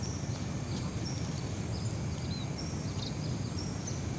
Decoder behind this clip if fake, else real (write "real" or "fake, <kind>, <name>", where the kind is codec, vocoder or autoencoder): real